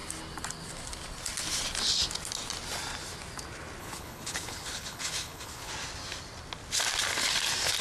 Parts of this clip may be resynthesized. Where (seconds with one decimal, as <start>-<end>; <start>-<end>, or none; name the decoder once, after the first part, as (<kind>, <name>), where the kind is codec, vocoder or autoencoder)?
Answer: 3.8-5.7 (codec, HILCodec)